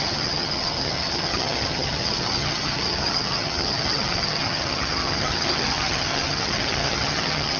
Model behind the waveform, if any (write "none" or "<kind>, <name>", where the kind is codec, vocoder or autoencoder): vocoder, HiFi-GAN